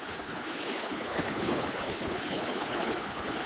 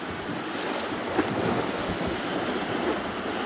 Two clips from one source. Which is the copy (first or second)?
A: first